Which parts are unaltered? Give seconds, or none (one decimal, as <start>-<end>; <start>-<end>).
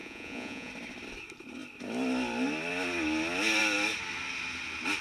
0.7-5.0